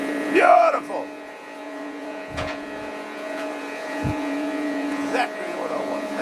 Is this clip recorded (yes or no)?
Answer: no